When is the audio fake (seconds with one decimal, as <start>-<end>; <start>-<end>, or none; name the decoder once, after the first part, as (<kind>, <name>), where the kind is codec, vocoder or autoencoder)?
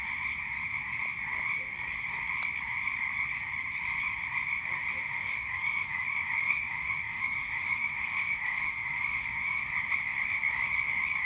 5.0-9.6 (autoencoder, DAC-VAE)